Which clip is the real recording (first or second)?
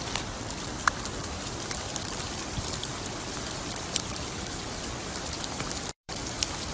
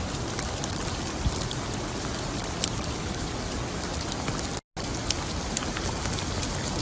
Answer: second